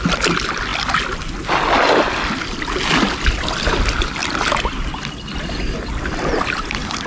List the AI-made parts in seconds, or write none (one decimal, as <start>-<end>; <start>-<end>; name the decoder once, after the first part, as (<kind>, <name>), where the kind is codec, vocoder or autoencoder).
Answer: none

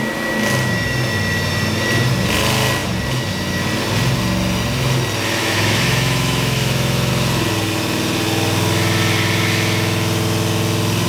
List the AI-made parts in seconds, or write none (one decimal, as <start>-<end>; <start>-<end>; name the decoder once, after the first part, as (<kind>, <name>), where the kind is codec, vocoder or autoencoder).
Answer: 5.4-7.1 (autoencoder, DAC-VAE)

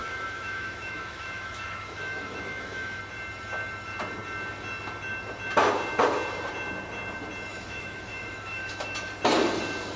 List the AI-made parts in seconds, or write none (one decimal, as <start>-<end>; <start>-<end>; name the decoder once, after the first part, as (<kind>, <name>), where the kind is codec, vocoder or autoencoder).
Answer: 0.0-3.0 (autoencoder, DAC-VAE); 7.5-9.1

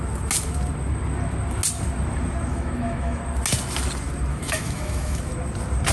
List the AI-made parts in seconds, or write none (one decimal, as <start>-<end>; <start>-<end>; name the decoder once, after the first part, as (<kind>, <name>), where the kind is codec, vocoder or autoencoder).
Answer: 2.5-3.2 (autoencoder, DAC-VAE); 4.3-5.2

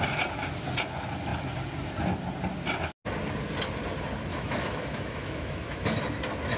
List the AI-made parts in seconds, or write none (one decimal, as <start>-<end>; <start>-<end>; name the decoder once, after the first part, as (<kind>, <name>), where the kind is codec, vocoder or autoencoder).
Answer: 4.3-6.0 (autoencoder, DAC-VAE)